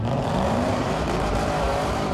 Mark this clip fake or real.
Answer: fake